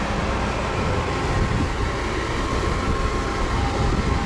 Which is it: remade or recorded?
recorded